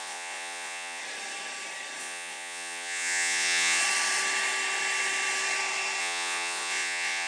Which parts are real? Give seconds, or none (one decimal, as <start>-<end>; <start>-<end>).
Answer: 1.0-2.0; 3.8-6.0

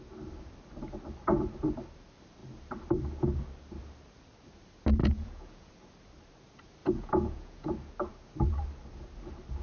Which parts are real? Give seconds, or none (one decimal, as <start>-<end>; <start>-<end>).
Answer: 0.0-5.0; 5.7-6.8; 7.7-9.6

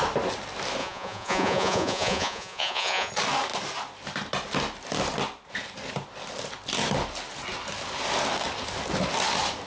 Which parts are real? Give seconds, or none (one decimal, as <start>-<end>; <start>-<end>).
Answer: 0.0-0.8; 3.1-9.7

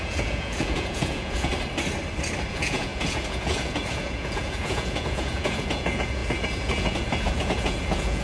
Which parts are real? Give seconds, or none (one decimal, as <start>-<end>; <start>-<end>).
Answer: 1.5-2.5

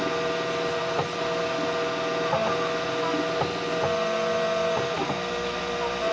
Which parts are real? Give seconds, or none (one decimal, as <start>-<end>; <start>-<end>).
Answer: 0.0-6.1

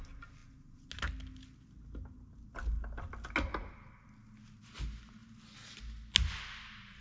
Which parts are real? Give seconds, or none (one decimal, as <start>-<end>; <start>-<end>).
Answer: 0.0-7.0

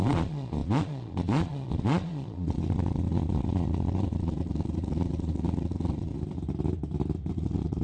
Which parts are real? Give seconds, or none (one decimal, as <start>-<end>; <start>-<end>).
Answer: 6.1-7.3

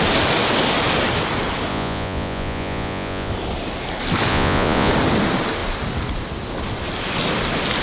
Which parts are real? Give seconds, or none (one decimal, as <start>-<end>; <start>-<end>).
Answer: 0.0-1.7; 3.3-4.3; 4.9-7.8